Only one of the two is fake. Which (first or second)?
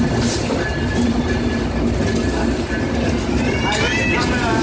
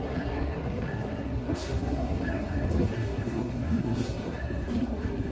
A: second